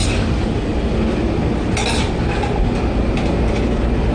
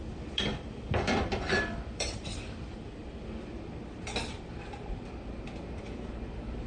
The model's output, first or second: second